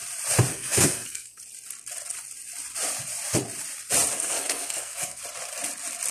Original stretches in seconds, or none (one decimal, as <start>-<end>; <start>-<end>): 0.0-0.5; 1.4-4.1; 5.2-6.1

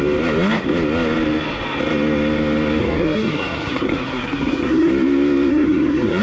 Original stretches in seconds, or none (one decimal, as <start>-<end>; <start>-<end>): 0.0-2.8; 4.9-5.5

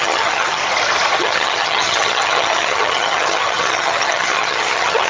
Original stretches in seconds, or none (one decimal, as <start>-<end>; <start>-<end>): 0.6-1.2

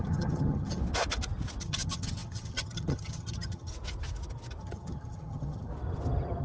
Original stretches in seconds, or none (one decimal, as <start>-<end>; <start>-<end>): 0.8-1.6; 3.7-4.6; 5.7-6.4